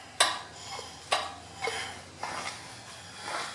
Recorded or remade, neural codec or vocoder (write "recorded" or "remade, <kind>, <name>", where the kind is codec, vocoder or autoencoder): recorded